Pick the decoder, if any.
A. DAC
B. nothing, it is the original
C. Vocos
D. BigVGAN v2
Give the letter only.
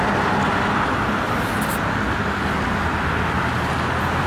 B